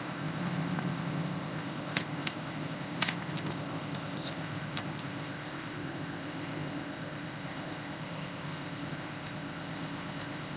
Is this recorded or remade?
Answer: remade